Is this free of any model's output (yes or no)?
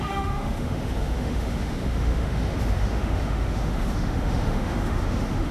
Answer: no